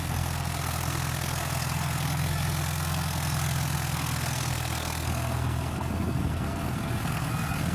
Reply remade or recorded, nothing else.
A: remade